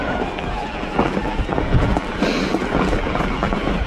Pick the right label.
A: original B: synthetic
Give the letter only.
B